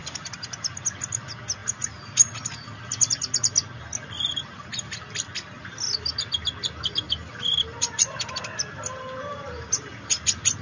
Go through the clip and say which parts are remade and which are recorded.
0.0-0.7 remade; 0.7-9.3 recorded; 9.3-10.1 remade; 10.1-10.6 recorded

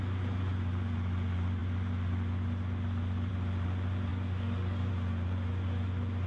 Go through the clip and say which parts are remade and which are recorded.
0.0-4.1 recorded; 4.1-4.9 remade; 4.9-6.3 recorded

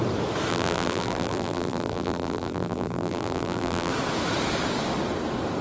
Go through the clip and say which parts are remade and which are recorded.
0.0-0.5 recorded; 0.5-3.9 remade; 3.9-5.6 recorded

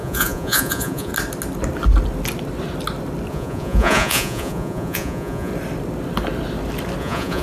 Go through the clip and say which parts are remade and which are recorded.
0.0-1.1 remade; 1.1-3.3 recorded; 3.3-5.5 remade; 5.5-7.0 recorded; 7.0-7.4 remade

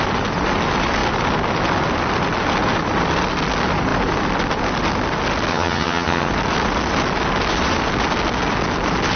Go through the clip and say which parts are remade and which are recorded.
0.0-5.5 recorded; 5.5-6.3 remade; 6.3-9.2 recorded

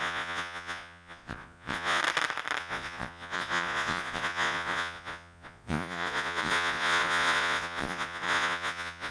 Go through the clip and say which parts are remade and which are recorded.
0.0-2.0 remade; 2.0-2.6 recorded; 2.6-9.1 remade

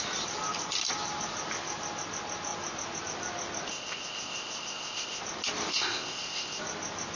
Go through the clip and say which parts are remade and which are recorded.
0.0-3.7 recorded; 3.7-5.2 remade; 5.2-5.7 recorded; 5.7-6.6 remade; 6.6-7.2 recorded

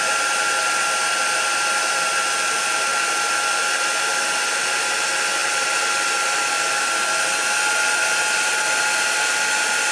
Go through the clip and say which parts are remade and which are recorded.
0.0-9.9 recorded